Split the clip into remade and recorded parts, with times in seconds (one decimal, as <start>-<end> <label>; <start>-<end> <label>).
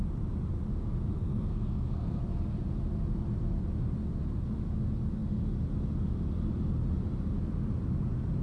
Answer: 0.0-1.1 recorded; 1.1-2.2 remade; 2.2-8.4 recorded